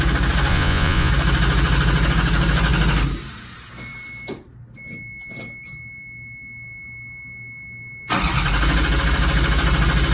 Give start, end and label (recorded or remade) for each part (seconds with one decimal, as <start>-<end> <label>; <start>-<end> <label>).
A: 0.0-0.5 recorded; 0.5-1.1 remade; 1.1-10.1 recorded